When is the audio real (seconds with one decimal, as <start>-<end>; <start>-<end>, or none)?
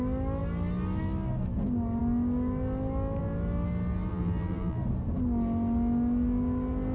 0.0-4.1; 4.8-6.9